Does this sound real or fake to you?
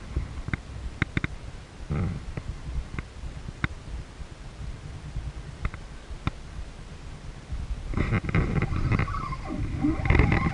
real